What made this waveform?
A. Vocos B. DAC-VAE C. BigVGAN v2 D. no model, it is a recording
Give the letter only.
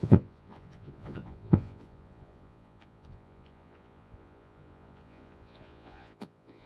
A